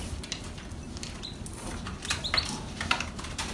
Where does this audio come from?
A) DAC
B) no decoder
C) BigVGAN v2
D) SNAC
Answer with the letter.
B